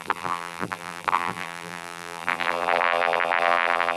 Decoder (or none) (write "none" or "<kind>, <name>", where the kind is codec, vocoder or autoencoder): vocoder, BigVGAN v2